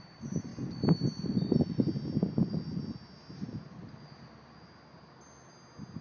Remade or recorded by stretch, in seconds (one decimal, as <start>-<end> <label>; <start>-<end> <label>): 0.0-6.0 recorded